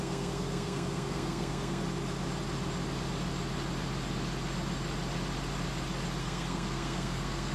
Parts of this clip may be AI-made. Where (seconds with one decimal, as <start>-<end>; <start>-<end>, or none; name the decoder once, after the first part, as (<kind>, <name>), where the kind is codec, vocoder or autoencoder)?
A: 0.0-1.8 (codec, SNAC); 6.2-7.5